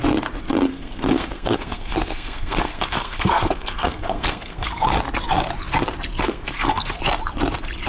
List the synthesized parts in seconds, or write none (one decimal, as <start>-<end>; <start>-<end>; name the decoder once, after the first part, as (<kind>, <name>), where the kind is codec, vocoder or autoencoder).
0.7-4.7 (codec, SNAC); 6.2-7.0